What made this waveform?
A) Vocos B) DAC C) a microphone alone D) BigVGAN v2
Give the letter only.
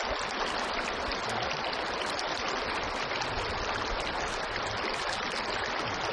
C